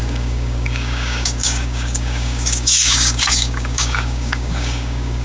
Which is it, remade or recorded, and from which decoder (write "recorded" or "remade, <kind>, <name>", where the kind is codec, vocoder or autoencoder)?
remade, codec, DAC